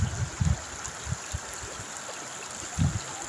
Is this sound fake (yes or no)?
no